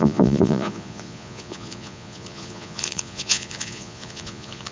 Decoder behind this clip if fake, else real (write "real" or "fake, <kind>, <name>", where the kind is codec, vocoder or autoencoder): fake, vocoder, Vocos